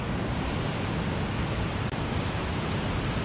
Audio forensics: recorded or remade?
recorded